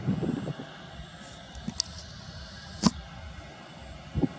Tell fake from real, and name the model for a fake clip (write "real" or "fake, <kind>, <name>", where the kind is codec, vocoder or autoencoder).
real